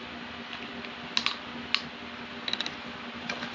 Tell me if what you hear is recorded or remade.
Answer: recorded